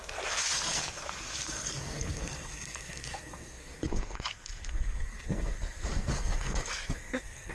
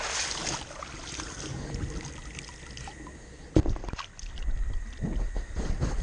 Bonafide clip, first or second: second